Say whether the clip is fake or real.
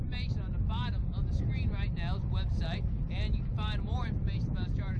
real